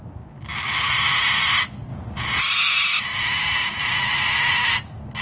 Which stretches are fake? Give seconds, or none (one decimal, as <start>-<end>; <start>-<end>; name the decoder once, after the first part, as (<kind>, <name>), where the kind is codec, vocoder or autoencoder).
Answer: 1.9-2.4 (vocoder, Vocos); 3.1-3.8